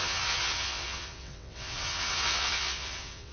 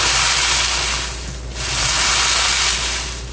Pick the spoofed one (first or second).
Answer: first